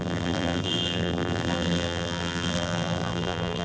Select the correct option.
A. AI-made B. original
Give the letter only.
A